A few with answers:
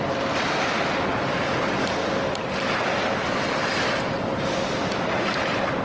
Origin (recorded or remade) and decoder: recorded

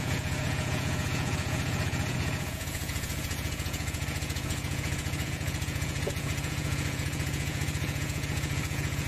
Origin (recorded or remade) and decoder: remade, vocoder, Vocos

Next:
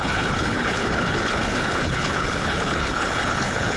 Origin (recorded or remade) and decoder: remade, codec, HILCodec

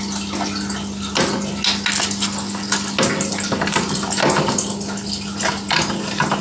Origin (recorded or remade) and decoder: recorded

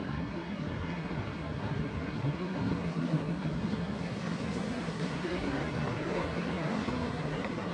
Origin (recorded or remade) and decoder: remade, codec, SNAC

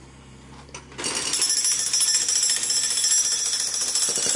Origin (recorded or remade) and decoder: recorded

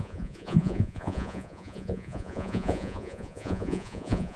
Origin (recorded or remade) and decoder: remade, vocoder, Vocos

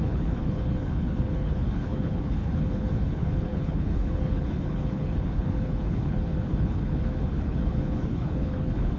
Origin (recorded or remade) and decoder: remade, codec, HILCodec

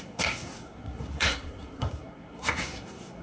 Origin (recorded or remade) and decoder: remade, codec, SNAC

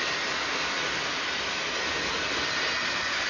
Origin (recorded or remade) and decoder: recorded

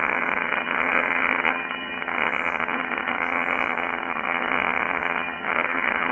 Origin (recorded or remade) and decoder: remade, vocoder, HiFi-GAN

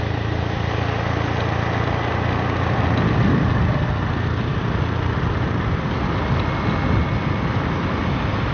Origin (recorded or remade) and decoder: recorded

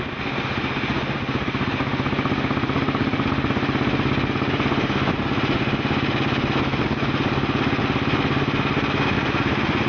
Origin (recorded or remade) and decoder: recorded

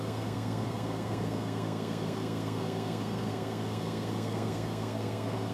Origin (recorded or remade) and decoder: remade, codec, SNAC